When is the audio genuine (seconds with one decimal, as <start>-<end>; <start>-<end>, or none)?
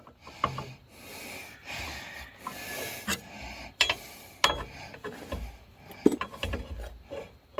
0.0-7.6